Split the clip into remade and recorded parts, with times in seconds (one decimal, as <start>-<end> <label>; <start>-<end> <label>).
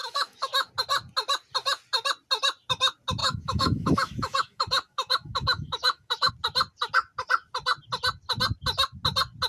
0.0-0.7 remade; 0.7-3.2 recorded; 3.2-6.3 remade; 6.3-9.5 recorded